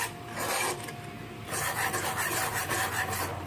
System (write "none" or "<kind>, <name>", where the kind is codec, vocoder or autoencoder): none